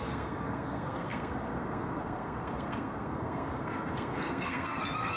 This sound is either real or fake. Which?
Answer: fake